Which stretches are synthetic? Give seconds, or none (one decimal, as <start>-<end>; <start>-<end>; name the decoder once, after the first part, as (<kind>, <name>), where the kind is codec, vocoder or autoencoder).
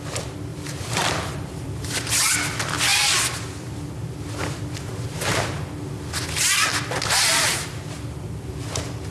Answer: 0.5-2.1 (vocoder, BigVGAN v2); 2.9-3.7; 7.3-8.5